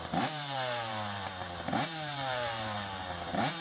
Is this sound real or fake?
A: fake